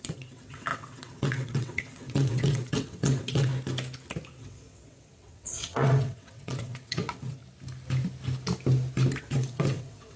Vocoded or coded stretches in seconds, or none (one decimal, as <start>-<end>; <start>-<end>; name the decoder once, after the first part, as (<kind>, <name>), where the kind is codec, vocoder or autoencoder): 0.0-3.5 (vocoder, WaveNeXt); 4.4-7.4; 9.2-10.2